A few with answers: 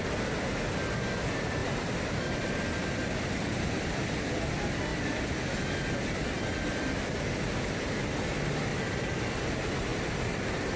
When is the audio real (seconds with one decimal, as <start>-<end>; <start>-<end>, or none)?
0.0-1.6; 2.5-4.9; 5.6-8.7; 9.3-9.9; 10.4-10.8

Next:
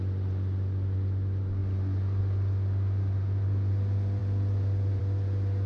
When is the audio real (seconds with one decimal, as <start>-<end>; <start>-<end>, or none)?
0.0-5.7

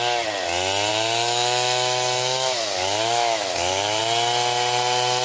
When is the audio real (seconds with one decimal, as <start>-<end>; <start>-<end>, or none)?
0.0-0.9; 4.0-5.2

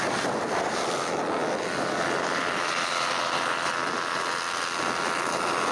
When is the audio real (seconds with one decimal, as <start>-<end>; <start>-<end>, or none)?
0.0-5.7

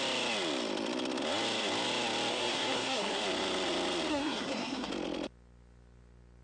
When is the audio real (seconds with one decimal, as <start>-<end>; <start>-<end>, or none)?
0.0-2.3; 3.2-4.1; 4.9-6.4

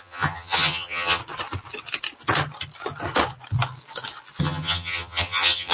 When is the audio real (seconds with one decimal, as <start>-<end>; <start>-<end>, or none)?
1.2-4.4

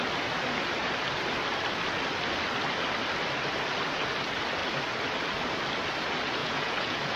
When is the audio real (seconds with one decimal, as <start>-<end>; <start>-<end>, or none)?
0.0-6.4

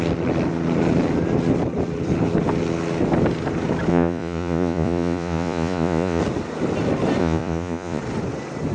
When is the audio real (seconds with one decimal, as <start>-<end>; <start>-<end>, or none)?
0.0-3.9; 6.2-7.2; 8.0-8.7